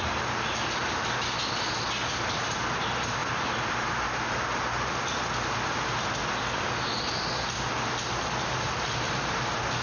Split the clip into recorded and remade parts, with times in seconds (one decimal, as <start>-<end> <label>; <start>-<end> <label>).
0.0-9.8 recorded